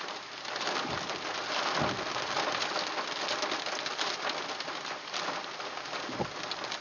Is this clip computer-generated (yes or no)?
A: no